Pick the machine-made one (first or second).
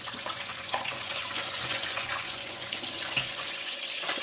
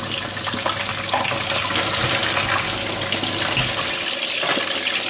first